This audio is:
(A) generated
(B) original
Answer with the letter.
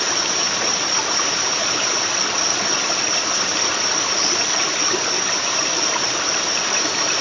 B